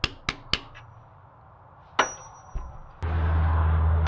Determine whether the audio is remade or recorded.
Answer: recorded